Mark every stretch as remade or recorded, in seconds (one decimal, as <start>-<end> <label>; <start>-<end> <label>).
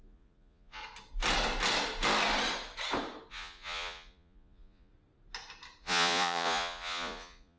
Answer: 0.0-0.8 remade; 0.8-3.3 recorded; 3.3-4.9 remade; 4.9-5.8 recorded; 5.8-7.6 remade